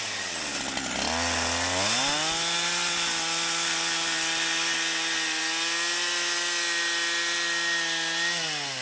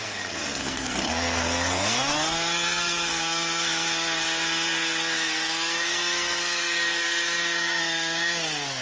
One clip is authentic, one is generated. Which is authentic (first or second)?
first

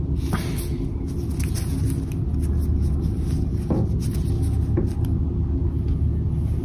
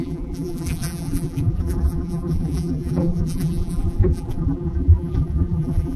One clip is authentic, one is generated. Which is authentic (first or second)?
first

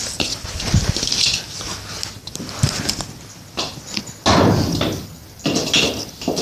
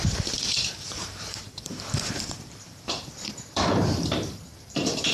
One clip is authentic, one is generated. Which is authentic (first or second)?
first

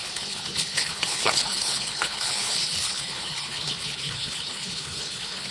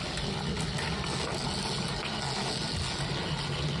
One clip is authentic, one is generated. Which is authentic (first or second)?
second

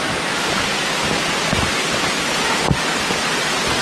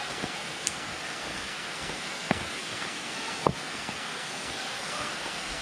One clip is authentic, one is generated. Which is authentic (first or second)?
first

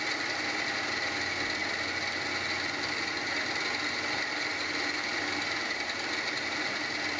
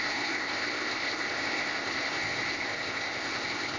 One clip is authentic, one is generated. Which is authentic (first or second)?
first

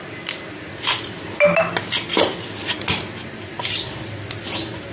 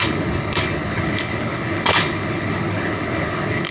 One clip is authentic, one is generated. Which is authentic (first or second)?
first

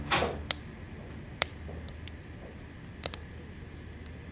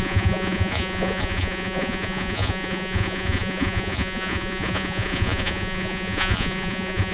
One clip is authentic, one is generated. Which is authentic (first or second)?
first